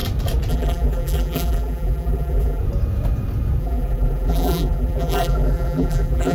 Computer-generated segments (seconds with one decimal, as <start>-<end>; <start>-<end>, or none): 0.5-2.6; 3.6-6.3